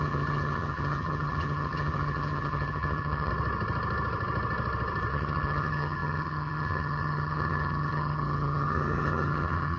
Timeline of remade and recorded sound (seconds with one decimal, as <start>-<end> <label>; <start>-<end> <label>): 0.0-3.3 remade; 3.3-5.1 recorded; 5.1-9.8 remade